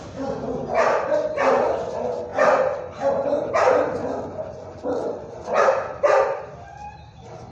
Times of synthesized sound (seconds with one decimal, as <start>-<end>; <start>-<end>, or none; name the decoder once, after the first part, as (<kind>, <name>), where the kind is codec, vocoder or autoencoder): none